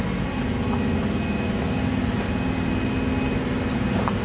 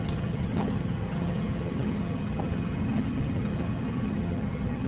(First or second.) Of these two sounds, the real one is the first